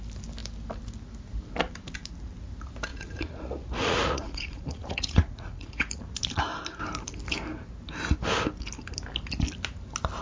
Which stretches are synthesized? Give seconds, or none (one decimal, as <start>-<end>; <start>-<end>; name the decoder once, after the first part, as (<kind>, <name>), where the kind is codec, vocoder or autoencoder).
2.9-5.9 (vocoder, Vocos)